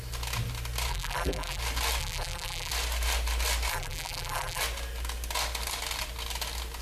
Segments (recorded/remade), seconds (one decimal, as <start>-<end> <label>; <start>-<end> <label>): 0.0-0.9 recorded; 0.9-1.6 remade; 1.6-2.0 recorded; 2.0-2.7 remade; 2.7-3.7 recorded; 3.7-4.6 remade; 4.6-6.8 recorded